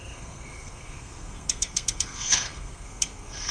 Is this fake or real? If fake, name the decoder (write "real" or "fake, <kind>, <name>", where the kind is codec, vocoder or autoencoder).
fake, codec, SNAC